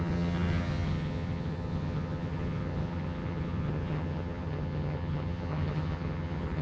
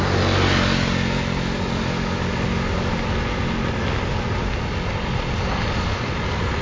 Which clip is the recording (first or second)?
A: second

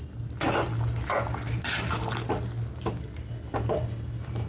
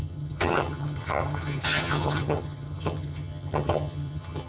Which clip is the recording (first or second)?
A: first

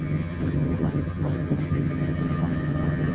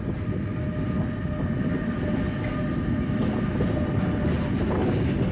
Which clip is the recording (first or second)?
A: second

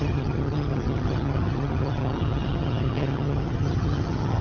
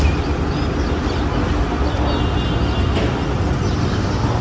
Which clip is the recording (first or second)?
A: second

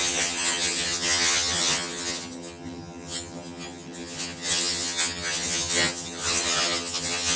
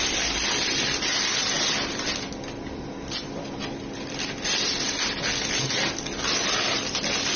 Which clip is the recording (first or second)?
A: second